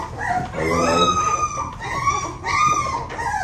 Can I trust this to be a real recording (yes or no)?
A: yes